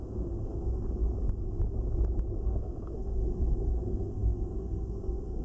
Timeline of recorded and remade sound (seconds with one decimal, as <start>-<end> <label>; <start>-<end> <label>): 0.0-0.8 remade; 0.8-2.4 recorded; 2.4-3.2 remade; 3.2-3.7 recorded; 3.7-5.4 remade